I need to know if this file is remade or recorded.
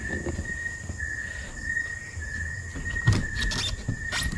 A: recorded